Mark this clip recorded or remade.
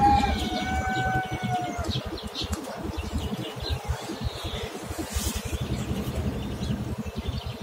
recorded